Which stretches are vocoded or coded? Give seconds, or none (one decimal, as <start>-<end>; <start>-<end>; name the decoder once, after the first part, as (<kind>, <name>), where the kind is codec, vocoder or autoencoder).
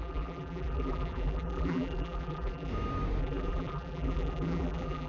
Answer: 0.0-2.7 (vocoder, BigVGAN v2); 3.2-5.1